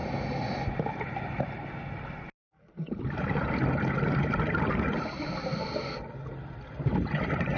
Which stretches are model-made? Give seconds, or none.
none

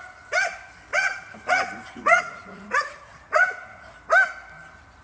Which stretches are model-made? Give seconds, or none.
0.9-3.9 (vocoder, Vocos)

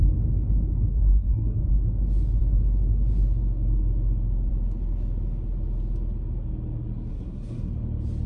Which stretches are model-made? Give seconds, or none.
0.9-1.6 (codec, SNAC); 7.1-7.7

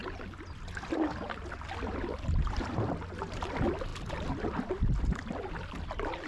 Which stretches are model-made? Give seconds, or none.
none

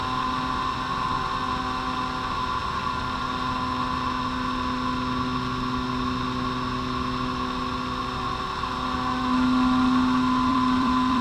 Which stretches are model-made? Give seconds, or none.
2.6-3.2 (vocoder, BigVGAN v2); 10.5-11.2

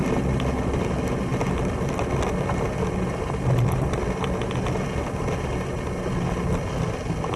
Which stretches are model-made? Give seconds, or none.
none

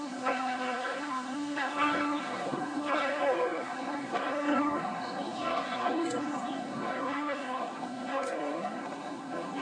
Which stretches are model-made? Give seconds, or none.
0.0-9.6 (codec, SNAC)